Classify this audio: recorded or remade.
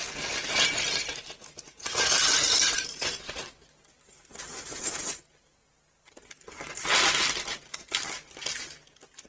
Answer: recorded